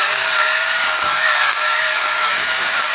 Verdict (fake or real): fake